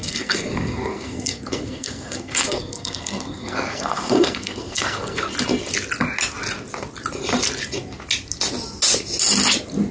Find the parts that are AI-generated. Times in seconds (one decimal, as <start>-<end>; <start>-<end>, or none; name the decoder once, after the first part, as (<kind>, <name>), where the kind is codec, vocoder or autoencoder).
0.0-5.3 (codec, SNAC)